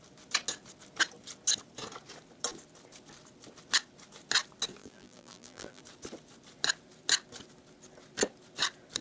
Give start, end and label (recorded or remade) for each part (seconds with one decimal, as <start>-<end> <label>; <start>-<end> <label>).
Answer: 0.0-4.8 recorded; 4.8-5.8 remade; 5.8-9.0 recorded